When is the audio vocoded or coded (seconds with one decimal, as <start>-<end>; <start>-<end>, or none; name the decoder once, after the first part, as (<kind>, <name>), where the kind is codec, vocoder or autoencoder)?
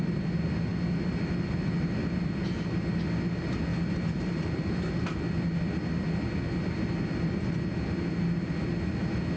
none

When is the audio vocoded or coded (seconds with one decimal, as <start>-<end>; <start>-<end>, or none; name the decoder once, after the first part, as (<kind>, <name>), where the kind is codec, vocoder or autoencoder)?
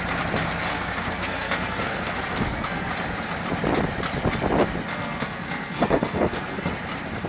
0.7-2.9 (codec, SNAC); 4.9-6.7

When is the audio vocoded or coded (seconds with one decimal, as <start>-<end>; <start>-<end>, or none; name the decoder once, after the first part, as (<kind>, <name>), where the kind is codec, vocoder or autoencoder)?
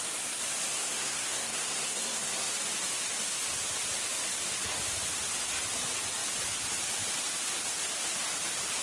0.7-2.5 (codec, SNAC)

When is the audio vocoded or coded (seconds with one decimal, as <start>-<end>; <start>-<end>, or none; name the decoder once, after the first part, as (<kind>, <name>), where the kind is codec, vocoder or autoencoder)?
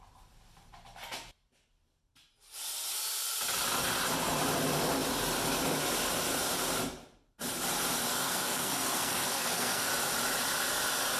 8.1-9.9 (codec, SNAC)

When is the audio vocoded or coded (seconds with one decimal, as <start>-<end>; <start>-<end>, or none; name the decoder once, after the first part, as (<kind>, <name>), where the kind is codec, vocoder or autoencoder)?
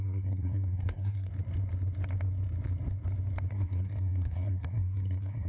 0.0-1.3 (codec, SNAC); 3.5-5.5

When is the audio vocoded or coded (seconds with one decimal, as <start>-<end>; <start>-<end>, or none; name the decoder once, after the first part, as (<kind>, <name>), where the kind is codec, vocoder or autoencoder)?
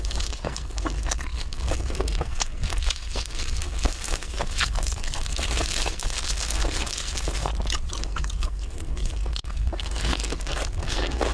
0.0-7.5 (codec, SNAC); 8.0-11.3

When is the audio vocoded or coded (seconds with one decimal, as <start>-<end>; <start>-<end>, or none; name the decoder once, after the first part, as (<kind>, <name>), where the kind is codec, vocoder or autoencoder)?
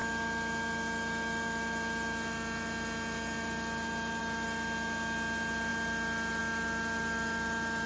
none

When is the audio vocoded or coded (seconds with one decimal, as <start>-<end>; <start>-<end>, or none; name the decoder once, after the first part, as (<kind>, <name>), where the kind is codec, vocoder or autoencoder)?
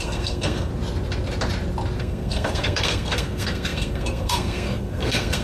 0.0-0.7 (codec, SNAC); 2.0-5.4